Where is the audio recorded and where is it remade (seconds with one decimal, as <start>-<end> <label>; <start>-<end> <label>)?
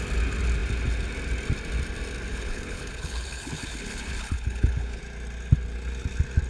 0.0-2.3 recorded; 2.3-5.0 remade; 5.0-6.5 recorded